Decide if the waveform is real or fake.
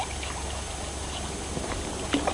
real